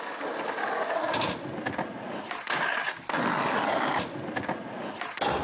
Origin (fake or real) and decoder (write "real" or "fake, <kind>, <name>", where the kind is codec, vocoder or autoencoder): real